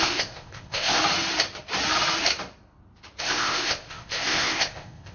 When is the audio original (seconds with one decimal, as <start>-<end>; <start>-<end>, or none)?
1.0-3.2